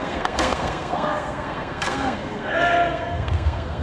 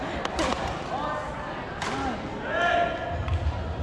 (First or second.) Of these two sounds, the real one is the second